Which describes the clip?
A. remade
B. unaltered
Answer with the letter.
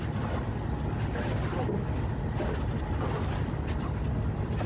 B